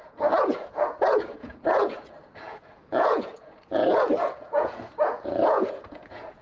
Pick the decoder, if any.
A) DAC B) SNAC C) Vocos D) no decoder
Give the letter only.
C